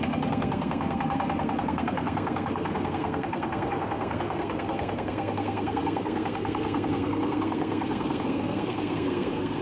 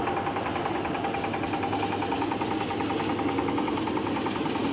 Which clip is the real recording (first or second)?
second